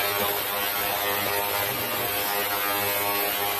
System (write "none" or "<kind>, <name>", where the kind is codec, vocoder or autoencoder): none